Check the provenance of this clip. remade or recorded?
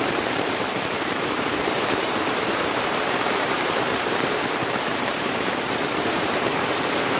remade